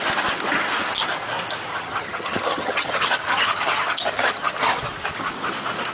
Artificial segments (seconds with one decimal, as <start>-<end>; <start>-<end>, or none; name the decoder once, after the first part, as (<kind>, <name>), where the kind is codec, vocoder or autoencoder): 1.7-4.5 (vocoder, HiFi-GAN)